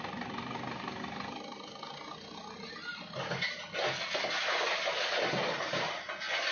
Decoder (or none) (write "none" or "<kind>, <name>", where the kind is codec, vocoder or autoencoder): none